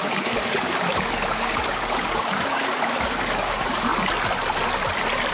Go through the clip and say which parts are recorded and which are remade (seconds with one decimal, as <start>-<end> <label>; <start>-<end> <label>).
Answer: 0.0-3.9 remade; 3.9-5.3 recorded